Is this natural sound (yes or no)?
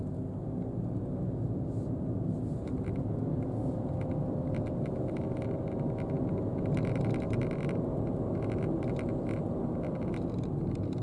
yes